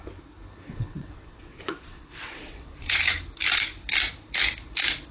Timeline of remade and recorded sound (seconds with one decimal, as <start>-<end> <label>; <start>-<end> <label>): 0.0-0.7 recorded; 0.7-3.0 remade; 3.0-5.1 recorded